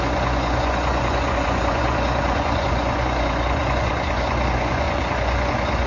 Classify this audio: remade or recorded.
remade